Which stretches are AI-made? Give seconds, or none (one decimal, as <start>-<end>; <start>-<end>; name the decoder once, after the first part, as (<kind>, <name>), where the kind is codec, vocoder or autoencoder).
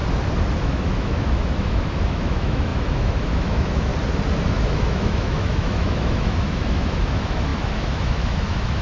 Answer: 0.6-3.9 (autoencoder, DAC-VAE); 4.5-8.8